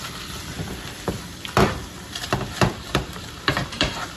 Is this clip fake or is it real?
fake